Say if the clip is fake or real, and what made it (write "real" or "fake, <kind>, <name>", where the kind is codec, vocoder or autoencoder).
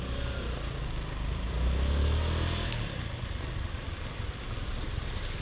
real